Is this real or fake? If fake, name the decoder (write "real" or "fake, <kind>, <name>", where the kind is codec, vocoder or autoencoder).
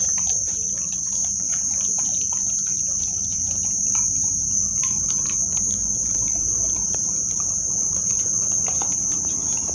fake, vocoder, BigVGAN v2